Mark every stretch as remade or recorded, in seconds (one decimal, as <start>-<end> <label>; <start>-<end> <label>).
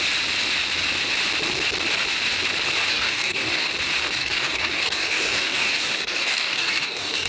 0.0-2.9 recorded; 2.9-3.7 remade; 3.7-4.2 recorded; 4.2-7.3 remade